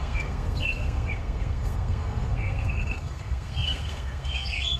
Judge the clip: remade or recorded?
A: remade